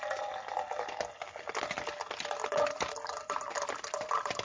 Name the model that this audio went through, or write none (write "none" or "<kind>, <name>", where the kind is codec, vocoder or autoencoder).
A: none